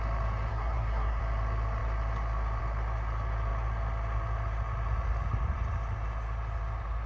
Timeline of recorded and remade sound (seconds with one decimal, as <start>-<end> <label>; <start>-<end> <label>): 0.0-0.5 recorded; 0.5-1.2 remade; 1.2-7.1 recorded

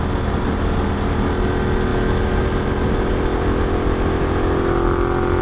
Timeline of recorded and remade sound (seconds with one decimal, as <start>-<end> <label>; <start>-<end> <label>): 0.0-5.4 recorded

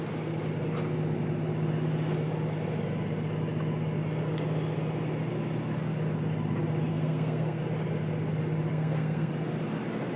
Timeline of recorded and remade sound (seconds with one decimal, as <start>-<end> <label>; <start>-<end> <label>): 0.0-6.9 recorded; 6.9-7.6 remade; 7.6-8.7 recorded; 8.7-9.3 remade; 9.3-10.2 recorded